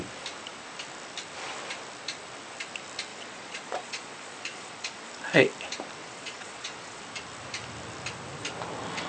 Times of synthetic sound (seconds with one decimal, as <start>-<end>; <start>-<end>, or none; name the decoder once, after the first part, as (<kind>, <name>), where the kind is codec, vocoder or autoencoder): 3.1-5.1 (vocoder, Vocos); 6.0-7.0